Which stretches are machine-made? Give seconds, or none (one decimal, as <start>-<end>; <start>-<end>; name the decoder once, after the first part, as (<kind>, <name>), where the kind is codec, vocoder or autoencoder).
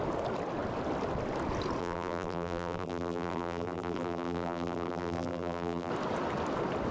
1.8-5.9 (vocoder, BigVGAN v2)